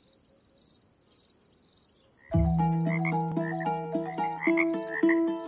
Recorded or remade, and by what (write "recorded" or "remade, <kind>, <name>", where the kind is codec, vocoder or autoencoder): recorded